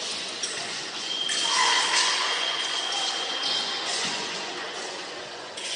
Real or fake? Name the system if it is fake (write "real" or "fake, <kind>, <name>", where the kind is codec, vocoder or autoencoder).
fake, vocoder, Vocos